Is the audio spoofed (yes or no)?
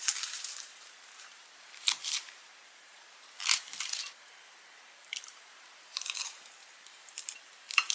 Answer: yes